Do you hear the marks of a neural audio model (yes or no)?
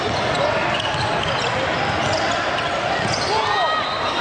no